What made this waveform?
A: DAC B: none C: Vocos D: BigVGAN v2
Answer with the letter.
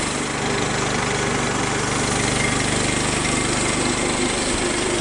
B